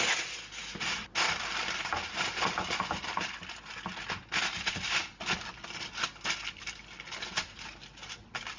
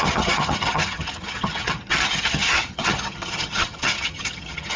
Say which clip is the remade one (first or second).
second